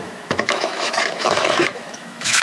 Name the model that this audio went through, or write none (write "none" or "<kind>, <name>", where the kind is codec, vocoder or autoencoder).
autoencoder, DAC-VAE